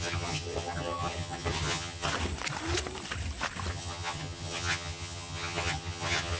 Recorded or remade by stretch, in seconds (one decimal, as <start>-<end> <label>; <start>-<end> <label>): 0.0-2.1 remade; 2.1-3.7 recorded; 3.7-6.4 remade